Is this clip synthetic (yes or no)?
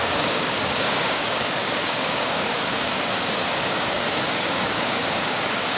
yes